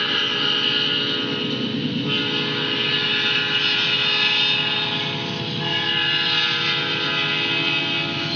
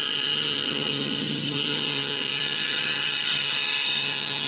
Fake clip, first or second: second